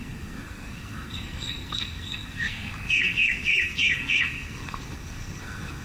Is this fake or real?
fake